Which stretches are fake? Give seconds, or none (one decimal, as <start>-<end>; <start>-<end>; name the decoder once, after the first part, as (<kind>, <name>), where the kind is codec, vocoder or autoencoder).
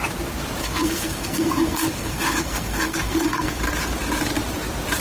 0.6-3.6 (codec, SNAC)